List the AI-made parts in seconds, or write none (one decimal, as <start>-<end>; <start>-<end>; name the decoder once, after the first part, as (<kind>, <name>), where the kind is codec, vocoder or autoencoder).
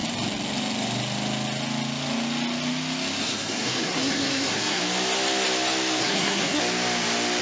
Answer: 3.2-4.8 (codec, SNAC); 6.0-6.6